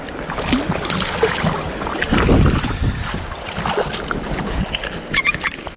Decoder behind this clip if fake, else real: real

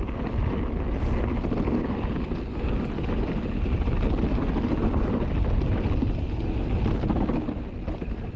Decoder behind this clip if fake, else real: real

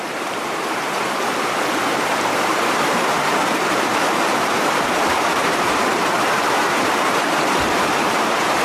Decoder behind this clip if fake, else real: fake, vocoder, BigVGAN v2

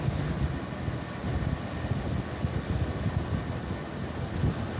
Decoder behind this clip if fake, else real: real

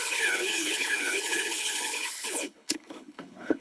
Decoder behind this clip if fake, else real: fake, codec, HILCodec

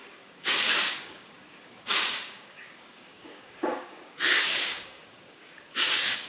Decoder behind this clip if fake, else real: fake, codec, DAC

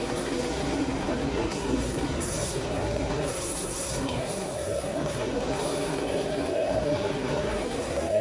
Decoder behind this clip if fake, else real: fake, codec, SNAC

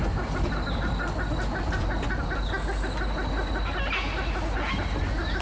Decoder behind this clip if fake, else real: real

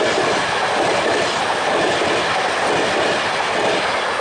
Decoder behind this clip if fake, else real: real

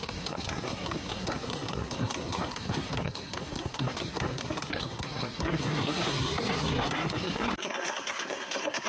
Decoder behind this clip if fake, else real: fake, codec, SNAC